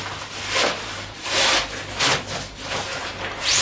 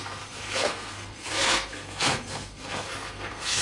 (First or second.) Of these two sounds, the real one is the first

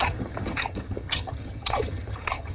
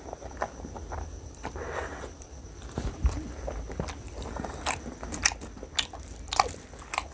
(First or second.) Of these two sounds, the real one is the second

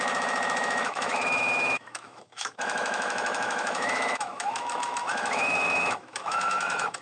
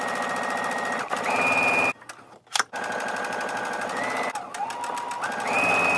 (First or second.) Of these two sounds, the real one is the second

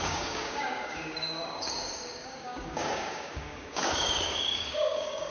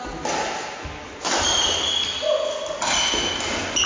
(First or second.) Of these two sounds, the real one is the second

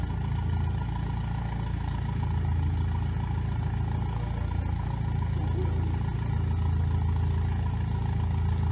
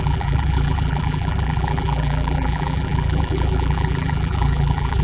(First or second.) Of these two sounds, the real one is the first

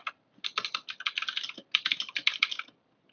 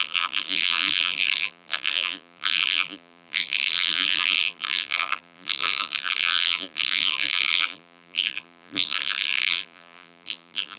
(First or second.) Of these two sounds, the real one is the first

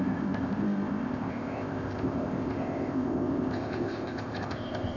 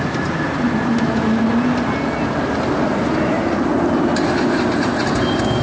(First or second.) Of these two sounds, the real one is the second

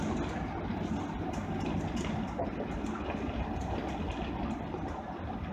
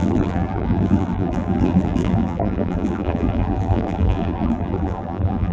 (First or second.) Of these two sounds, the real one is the first